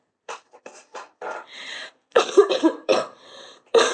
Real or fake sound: fake